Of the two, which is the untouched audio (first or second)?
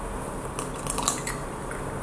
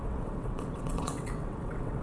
first